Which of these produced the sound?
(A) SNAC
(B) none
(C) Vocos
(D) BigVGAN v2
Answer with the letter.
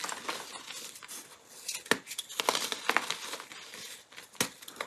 B